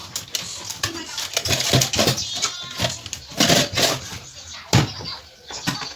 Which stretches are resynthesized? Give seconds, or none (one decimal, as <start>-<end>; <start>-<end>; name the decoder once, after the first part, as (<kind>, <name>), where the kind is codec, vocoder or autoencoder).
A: none